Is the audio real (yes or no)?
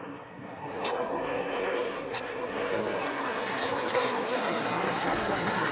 no